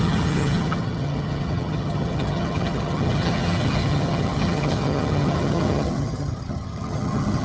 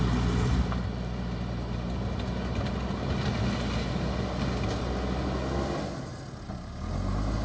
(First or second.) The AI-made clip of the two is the first